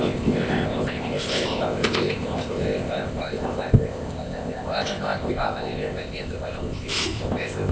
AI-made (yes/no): yes